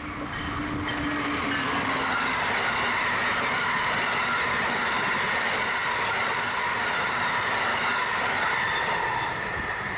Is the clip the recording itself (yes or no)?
yes